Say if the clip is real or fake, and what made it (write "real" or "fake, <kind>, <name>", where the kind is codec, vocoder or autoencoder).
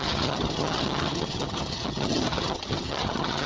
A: fake, vocoder, HiFi-GAN